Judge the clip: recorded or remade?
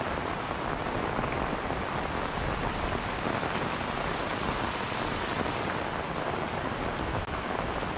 recorded